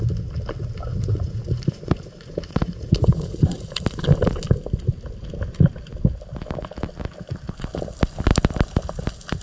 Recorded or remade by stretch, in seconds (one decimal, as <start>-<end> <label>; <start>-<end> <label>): 0.0-0.9 recorded; 0.9-3.8 remade; 3.8-9.4 recorded